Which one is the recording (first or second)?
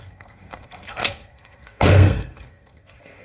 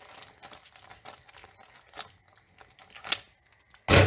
second